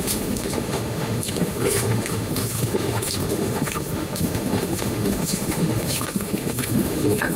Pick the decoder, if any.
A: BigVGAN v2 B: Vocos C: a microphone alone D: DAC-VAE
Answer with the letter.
D